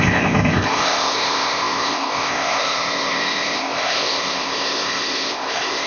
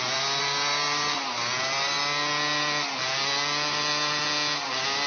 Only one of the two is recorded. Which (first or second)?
second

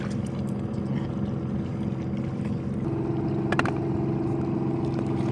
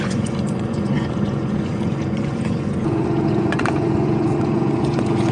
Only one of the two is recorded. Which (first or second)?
first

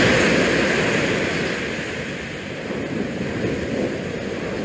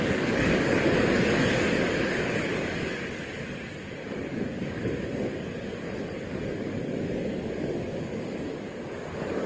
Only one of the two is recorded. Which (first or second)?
first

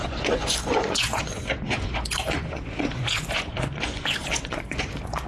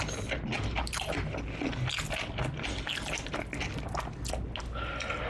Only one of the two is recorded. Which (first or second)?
second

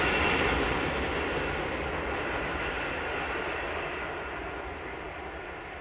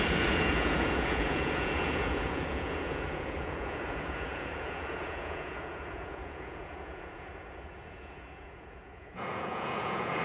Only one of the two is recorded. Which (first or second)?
first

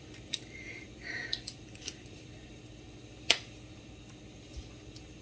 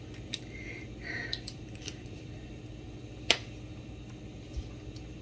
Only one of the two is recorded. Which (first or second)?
second